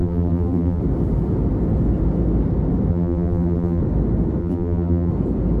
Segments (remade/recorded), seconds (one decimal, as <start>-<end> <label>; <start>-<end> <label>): 0.0-0.8 remade; 0.8-2.9 recorded; 2.9-3.8 remade; 3.8-4.4 recorded; 4.4-5.1 remade; 5.1-5.6 recorded

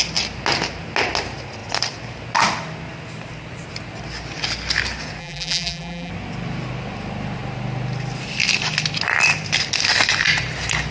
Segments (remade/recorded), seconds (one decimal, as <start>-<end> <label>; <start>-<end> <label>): 0.0-5.2 recorded; 5.2-6.1 remade; 6.1-10.9 recorded

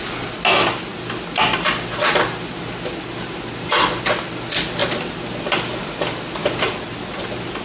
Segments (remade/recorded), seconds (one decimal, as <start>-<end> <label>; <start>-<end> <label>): 0.0-0.9 recorded; 0.9-2.6 remade; 2.6-4.8 recorded; 4.8-5.8 remade; 5.8-6.4 recorded; 6.4-7.0 remade; 7.0-7.6 recorded